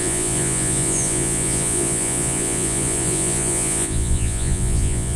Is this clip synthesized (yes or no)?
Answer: yes